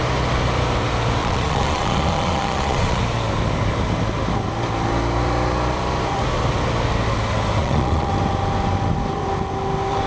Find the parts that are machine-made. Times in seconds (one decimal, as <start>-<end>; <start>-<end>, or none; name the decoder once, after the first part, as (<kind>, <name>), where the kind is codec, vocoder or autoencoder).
1.2-3.0 (vocoder, Vocos); 7.6-8.1